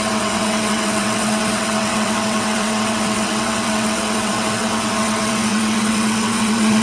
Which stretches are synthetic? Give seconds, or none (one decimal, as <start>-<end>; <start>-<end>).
0.0-6.8